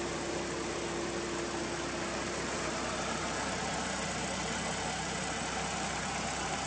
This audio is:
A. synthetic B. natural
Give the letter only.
B